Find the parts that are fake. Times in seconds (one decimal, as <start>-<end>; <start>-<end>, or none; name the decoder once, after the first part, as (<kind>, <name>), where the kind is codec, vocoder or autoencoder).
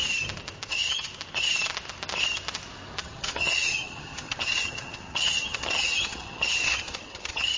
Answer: 0.7-1.1 (vocoder, HiFi-GAN); 3.0-7.6